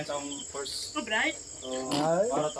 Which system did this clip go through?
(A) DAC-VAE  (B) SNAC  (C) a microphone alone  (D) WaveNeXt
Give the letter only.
C